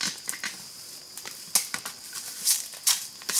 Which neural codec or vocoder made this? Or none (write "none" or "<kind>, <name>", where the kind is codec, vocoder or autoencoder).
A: none